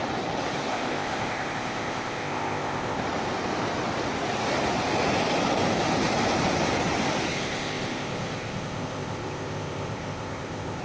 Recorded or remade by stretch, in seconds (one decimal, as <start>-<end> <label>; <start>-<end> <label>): 0.0-0.7 recorded; 0.7-3.0 remade; 3.0-7.3 recorded; 7.3-10.8 remade